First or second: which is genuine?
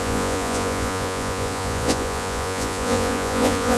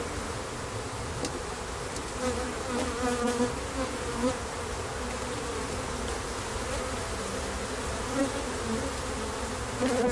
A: second